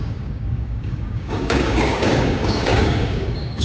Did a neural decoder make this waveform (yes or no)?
yes